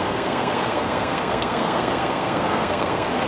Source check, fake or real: fake